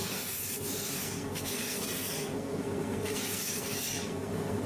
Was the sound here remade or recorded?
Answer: remade